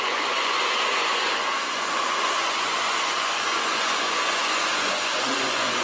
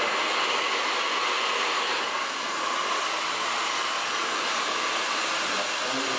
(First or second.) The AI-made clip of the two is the first